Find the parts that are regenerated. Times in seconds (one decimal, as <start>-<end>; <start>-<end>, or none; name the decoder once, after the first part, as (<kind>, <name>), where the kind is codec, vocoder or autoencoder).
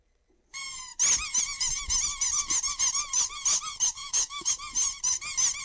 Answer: 4.0-4.5 (autoencoder, DAC-VAE)